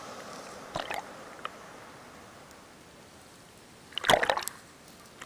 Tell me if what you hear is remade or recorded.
recorded